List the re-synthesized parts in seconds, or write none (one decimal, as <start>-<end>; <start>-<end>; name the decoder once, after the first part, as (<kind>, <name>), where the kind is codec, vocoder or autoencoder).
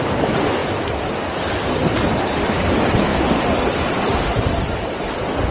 0.6-1.1 (vocoder, BigVGAN v2); 3.1-4.4